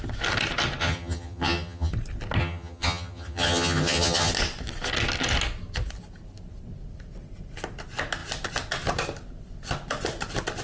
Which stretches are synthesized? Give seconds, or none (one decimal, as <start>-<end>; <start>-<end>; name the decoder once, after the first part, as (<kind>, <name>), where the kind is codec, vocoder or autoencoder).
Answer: 0.8-1.9 (vocoder, HiFi-GAN); 2.4-4.3